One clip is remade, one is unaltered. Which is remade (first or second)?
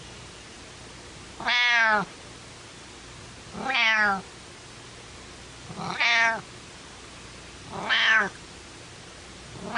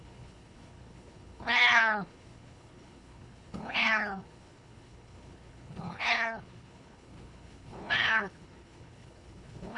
second